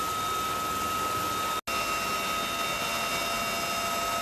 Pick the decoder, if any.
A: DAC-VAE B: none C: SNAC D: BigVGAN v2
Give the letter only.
B